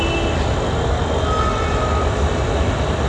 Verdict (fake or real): real